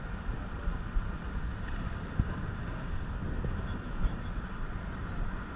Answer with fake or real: real